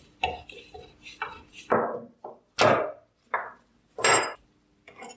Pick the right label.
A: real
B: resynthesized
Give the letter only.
A